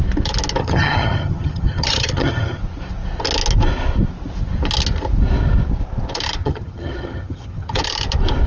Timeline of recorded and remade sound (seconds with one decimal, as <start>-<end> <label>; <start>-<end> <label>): 0.0-0.6 recorded; 0.6-2.6 remade; 2.6-6.4 recorded; 6.4-7.8 remade; 7.8-8.5 recorded